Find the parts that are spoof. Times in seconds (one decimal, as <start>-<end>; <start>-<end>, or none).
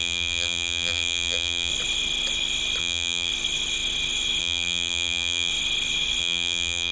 0.0-1.7; 2.8-3.3; 4.4-5.5; 6.2-6.9